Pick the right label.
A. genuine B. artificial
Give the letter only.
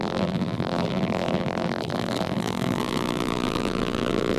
B